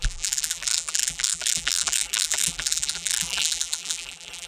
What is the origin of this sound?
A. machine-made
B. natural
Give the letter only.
A